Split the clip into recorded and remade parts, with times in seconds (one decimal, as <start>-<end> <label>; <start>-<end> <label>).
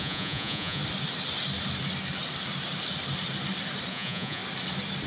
0.0-0.8 remade; 0.8-3.9 recorded; 3.9-4.4 remade; 4.4-5.1 recorded